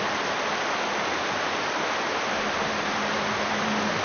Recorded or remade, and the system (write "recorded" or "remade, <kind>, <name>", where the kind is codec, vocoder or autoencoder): recorded